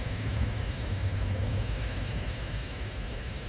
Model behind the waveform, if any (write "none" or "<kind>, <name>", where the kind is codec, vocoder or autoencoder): autoencoder, DAC-VAE